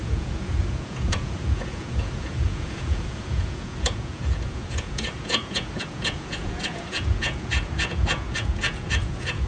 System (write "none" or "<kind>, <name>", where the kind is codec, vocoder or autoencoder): vocoder, Vocos